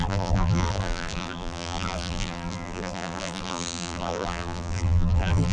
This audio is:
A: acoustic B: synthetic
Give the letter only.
B